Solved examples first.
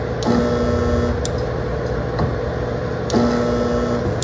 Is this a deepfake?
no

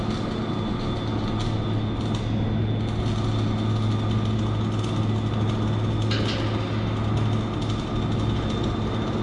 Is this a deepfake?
no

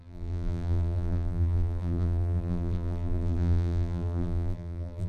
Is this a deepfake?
yes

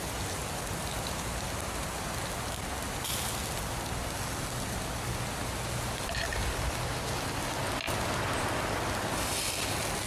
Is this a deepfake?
no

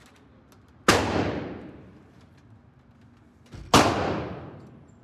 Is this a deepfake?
no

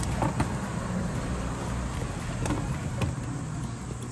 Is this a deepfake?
no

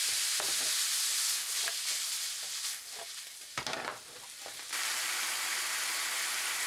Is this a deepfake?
no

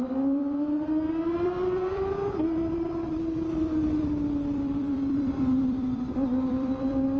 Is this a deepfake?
yes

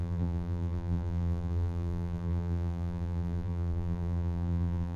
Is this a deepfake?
yes